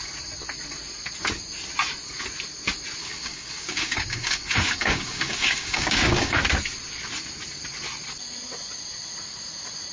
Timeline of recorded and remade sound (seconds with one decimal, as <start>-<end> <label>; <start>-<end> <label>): 0.0-3.0 recorded; 3.0-6.4 remade; 6.4-9.9 recorded